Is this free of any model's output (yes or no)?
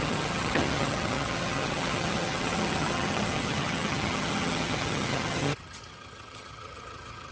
no